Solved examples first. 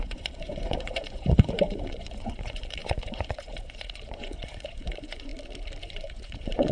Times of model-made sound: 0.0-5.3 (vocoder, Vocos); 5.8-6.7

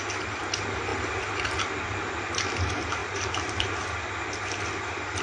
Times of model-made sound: 3.0-3.8 (vocoder, BigVGAN v2)

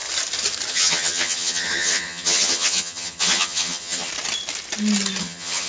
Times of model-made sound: 0.7-4.1 (vocoder, HiFi-GAN); 5.2-5.7

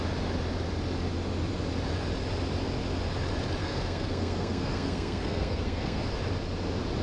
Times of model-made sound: 3.6-6.0 (codec, SNAC)

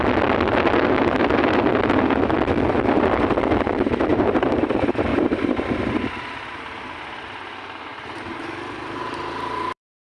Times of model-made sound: 4.1-4.6 (vocoder, BigVGAN v2); 5.1-5.8; 7.9-10.1

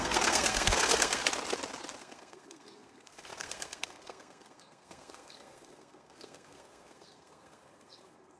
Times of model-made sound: 0.0-1.2 (codec, SNAC); 2.0-8.4

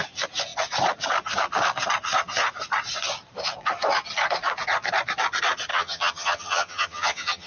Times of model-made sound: 5.7-7.5 (vocoder, HiFi-GAN)